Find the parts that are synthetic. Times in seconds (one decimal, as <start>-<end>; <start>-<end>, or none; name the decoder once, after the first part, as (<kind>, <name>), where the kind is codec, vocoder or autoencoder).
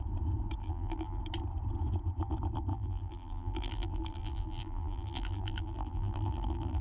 0.6-1.2 (vocoder, BigVGAN v2); 2.7-6.8